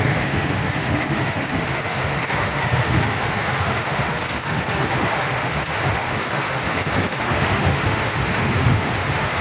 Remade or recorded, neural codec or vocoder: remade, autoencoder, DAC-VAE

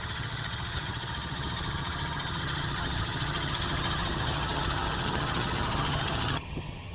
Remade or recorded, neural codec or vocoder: remade, vocoder, HiFi-GAN